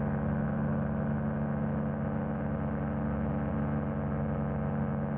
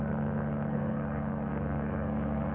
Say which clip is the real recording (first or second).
first